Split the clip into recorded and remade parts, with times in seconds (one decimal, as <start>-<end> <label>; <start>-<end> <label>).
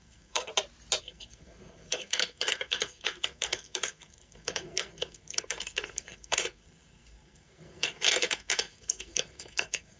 0.0-0.5 remade; 0.5-1.0 recorded; 1.0-10.0 remade